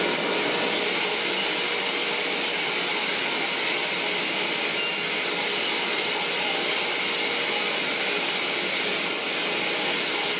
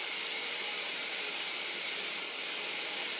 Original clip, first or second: first